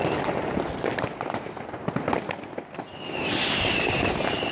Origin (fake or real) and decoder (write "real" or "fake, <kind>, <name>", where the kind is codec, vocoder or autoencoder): real